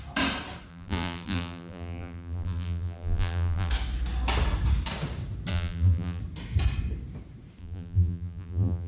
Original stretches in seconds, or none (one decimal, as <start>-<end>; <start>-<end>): 0.0-0.7; 3.7-5.5; 6.2-7.6